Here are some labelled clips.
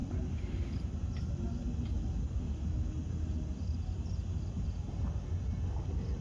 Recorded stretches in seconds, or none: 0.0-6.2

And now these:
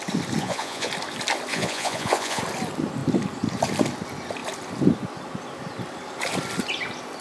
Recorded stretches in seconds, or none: 0.0-0.4; 0.9-1.5; 2.4-7.2

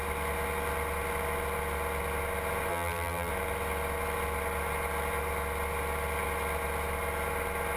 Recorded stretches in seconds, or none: 0.0-2.7; 3.3-7.8